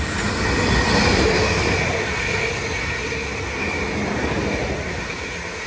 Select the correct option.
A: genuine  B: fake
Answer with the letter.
A